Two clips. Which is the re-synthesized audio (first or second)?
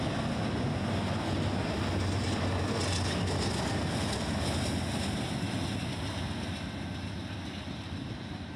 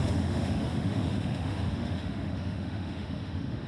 second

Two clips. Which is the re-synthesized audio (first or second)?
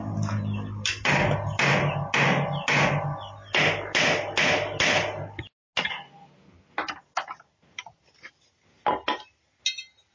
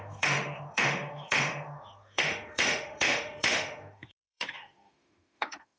second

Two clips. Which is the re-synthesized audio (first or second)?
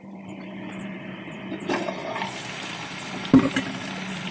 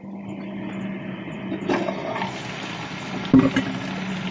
first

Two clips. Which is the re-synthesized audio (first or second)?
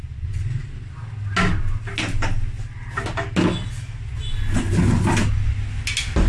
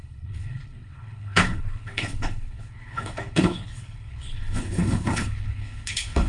second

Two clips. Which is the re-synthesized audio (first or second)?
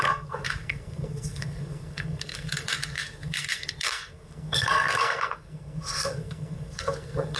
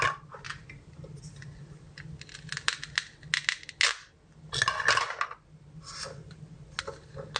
first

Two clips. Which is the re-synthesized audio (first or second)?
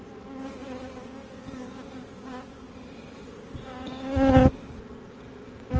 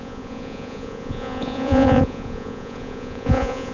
second